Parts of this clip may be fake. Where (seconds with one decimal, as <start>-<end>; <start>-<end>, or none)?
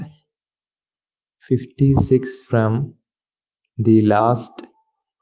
0.0-5.2